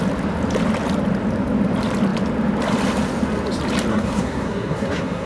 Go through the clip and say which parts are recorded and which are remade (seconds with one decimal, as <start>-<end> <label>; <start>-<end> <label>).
0.0-3.9 recorded; 3.9-5.3 remade